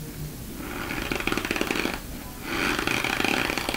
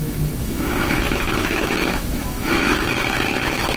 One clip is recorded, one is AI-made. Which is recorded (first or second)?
first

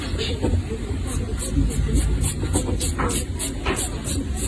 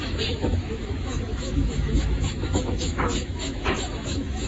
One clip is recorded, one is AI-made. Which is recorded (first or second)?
first